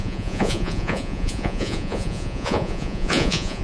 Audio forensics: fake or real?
fake